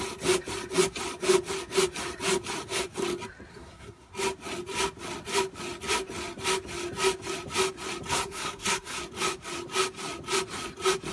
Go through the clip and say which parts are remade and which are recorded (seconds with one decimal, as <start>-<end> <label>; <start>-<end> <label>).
0.0-3.5 recorded; 3.5-4.1 remade; 4.1-8.1 recorded; 8.1-9.0 remade; 9.0-11.1 recorded